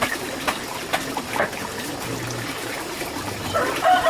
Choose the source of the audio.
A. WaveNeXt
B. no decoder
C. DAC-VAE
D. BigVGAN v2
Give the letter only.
D